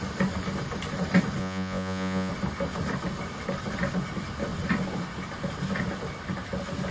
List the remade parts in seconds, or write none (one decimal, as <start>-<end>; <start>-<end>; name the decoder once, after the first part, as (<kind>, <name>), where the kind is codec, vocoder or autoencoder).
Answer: 1.4-2.3 (vocoder, Vocos)